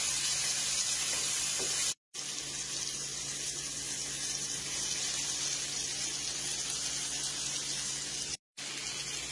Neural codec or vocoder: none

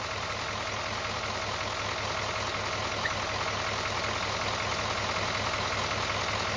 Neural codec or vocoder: none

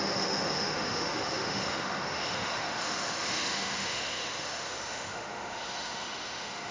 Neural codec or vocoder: autoencoder, DAC-VAE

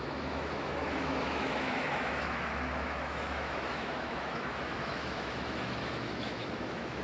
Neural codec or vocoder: autoencoder, DAC-VAE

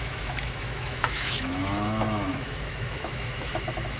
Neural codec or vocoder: autoencoder, DAC-VAE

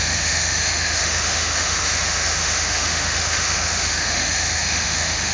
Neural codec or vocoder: autoencoder, DAC-VAE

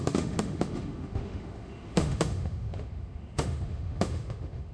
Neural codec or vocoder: autoencoder, DAC-VAE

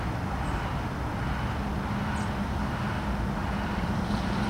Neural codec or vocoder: none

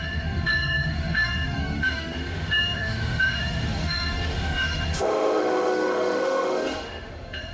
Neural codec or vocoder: autoencoder, DAC-VAE